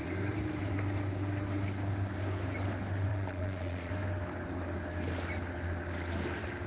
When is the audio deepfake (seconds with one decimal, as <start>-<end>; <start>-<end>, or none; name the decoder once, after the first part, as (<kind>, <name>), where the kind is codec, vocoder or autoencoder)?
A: 3.1-3.9 (vocoder, Vocos)